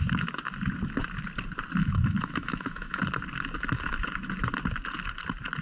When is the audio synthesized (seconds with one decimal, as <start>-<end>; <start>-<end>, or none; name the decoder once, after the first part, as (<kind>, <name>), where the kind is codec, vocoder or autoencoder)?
1.8-3.0 (autoencoder, DAC-VAE)